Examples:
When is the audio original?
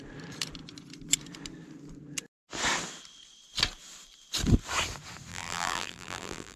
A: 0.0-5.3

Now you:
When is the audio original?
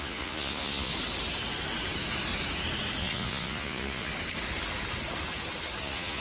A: 0.9-3.0; 4.1-5.8